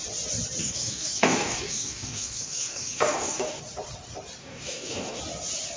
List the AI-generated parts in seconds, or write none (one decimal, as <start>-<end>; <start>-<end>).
0.6-3.6; 4.4-5.2